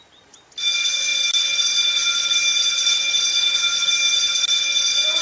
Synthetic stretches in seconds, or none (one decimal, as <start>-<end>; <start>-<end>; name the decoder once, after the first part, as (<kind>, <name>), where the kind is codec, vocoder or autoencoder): none